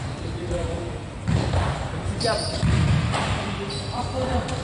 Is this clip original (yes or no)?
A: yes